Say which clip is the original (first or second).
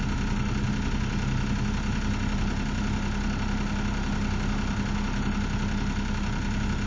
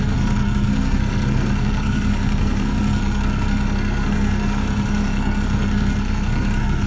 first